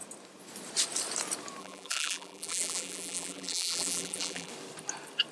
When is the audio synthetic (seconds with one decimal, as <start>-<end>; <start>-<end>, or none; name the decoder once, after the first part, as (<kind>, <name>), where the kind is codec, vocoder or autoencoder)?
1.6-4.5 (vocoder, BigVGAN v2)